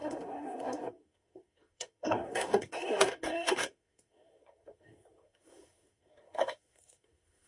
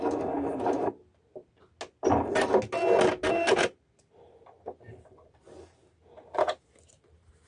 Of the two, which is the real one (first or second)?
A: second